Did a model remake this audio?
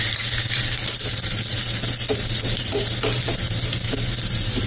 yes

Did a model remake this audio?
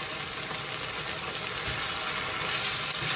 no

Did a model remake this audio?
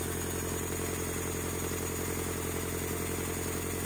no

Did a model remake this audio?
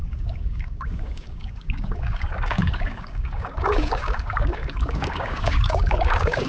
yes